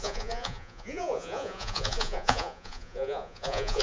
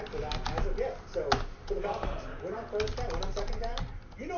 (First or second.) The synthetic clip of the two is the first